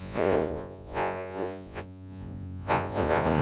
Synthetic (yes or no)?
yes